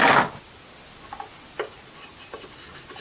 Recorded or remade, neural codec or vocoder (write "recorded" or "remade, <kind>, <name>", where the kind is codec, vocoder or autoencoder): recorded